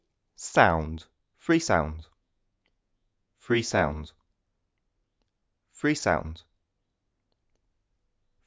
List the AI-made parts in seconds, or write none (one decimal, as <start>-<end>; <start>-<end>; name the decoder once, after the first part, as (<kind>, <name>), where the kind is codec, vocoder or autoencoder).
2.0-4.3 (vocoder, Vocos)